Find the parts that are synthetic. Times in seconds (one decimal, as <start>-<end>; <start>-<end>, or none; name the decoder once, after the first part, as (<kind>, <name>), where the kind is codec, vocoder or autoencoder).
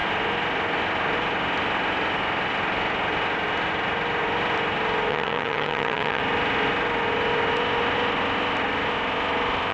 5.1-6.2 (vocoder, HiFi-GAN)